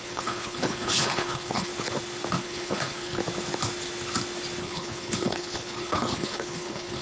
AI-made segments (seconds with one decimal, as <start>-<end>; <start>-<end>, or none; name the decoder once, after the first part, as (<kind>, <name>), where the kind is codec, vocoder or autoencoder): 0.0-1.7 (codec, HILCodec); 2.4-3.2; 4.6-7.0